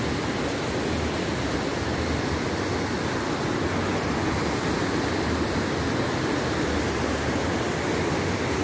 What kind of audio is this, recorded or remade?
recorded